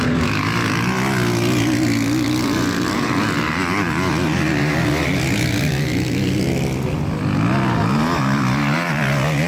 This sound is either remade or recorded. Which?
recorded